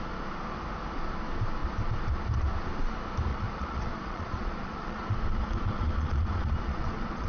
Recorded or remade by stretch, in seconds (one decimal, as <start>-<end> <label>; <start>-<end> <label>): 0.0-3.3 recorded; 3.3-7.3 remade